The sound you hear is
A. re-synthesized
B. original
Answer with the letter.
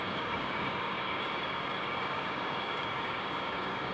A